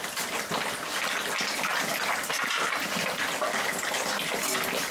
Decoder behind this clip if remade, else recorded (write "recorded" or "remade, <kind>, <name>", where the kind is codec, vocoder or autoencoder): recorded